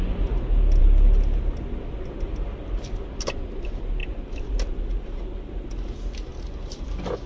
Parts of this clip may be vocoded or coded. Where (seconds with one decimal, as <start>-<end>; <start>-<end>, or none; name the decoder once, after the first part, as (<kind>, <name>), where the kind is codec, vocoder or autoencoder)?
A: none